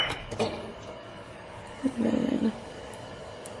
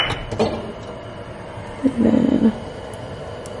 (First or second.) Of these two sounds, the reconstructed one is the first